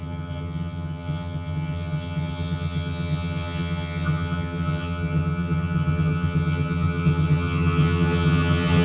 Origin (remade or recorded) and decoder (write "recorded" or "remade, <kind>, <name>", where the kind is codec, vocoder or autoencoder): remade, vocoder, HiFi-GAN